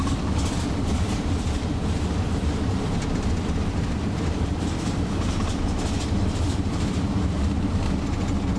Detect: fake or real fake